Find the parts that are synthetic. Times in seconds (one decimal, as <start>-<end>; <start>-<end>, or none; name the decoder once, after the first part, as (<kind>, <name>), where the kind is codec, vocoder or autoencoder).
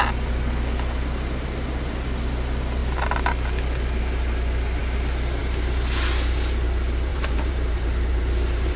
7.1-8.8 (vocoder, BigVGAN v2)